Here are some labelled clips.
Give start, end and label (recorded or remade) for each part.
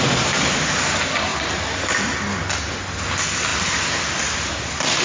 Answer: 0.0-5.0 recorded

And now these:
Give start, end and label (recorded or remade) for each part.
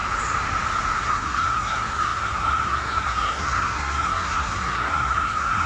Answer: 0.0-1.0 recorded; 1.0-5.7 remade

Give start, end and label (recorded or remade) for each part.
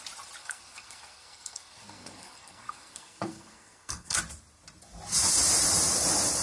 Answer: 0.0-0.4 recorded; 0.4-4.2 remade; 4.2-6.4 recorded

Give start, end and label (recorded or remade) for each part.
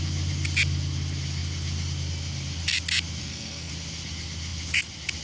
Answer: 0.0-3.2 recorded; 3.2-3.7 remade; 3.7-5.2 recorded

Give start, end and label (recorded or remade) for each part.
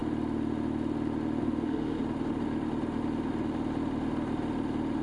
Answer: 0.0-1.4 recorded; 1.4-2.0 remade; 2.0-5.0 recorded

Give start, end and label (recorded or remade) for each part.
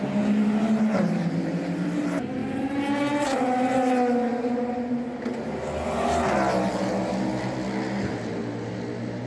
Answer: 0.0-9.3 recorded